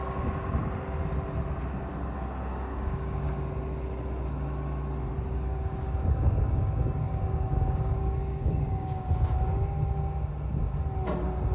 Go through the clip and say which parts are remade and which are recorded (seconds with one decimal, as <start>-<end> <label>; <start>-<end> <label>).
0.0-2.5 recorded; 2.5-3.3 remade; 3.3-5.5 recorded; 5.5-9.4 remade; 9.4-11.5 recorded